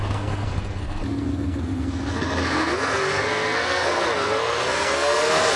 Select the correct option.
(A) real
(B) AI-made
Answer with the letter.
B